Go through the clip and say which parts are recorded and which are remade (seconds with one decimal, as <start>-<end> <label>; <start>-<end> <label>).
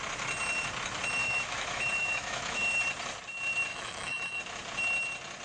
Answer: 0.0-1.2 recorded; 1.2-2.8 remade; 2.8-3.7 recorded; 3.7-4.4 remade; 4.4-5.4 recorded